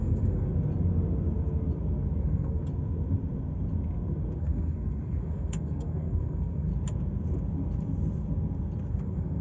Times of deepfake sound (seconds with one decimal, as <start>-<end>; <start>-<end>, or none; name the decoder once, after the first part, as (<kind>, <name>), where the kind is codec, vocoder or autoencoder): 0.0-0.5 (codec, SNAC); 2.2-2.6; 4.4-6.7; 8.9-9.4